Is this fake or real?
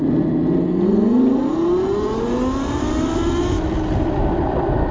real